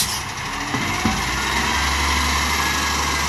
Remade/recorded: recorded